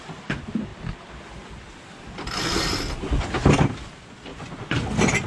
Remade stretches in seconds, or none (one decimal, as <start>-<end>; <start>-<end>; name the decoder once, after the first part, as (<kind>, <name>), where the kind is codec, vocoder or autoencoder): 4.3-4.8 (vocoder, Vocos)